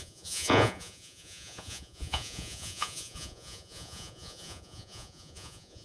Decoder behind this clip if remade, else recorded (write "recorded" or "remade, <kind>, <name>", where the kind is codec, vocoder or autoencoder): remade, vocoder, Vocos